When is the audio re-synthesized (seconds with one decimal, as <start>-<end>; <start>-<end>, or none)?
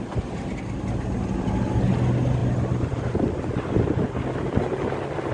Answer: none